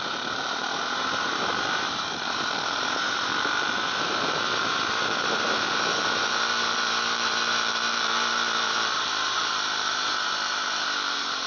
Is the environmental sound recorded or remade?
remade